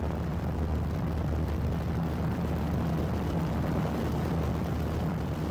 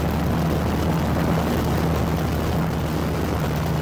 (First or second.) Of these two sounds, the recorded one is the second